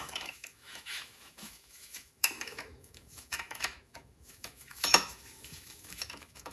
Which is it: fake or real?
fake